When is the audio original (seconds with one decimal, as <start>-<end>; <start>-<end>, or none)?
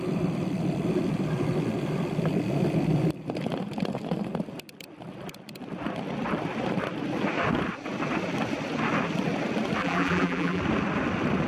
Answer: 0.0-9.8; 10.6-11.5